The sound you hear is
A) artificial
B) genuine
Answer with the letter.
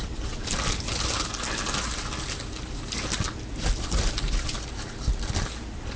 B